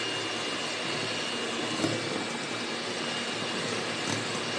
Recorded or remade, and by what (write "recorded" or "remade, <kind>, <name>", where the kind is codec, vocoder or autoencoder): recorded